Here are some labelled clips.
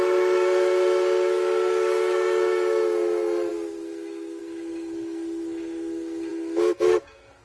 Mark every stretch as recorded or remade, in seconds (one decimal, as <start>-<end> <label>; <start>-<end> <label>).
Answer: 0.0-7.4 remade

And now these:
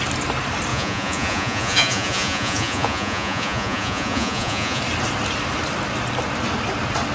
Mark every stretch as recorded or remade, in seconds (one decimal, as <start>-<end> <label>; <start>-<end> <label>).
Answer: 0.0-0.7 recorded; 0.7-4.8 remade; 4.8-7.1 recorded

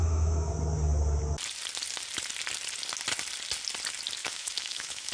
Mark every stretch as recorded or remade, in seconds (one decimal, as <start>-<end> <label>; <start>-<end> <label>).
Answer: 0.0-0.5 remade; 0.5-4.2 recorded; 4.2-5.1 remade

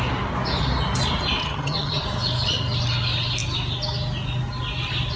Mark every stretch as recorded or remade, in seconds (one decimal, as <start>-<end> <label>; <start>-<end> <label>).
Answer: 0.0-1.4 recorded; 1.4-2.0 remade; 2.0-5.2 recorded